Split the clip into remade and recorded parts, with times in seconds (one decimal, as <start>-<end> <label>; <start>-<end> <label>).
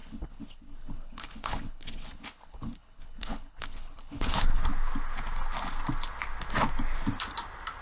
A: 0.0-4.7 remade; 4.7-7.8 recorded